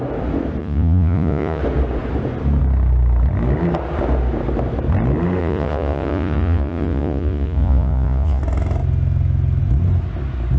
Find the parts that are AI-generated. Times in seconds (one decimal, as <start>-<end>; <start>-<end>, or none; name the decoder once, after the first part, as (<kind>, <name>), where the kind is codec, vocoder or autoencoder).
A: 0.6-1.6 (vocoder, Vocos); 5.4-8.4